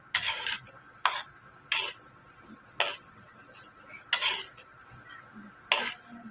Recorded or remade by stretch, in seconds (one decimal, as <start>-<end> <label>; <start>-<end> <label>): 0.0-6.3 recorded